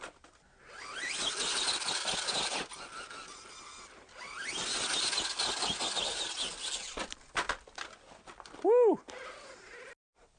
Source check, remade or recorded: recorded